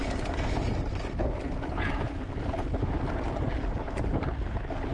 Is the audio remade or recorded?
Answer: recorded